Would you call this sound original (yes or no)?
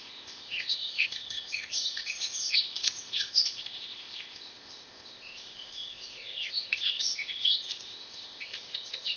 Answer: no